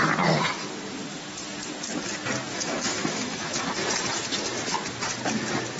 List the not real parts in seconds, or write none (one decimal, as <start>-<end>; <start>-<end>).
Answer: 2.5-3.6